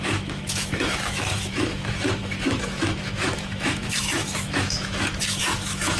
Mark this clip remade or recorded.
remade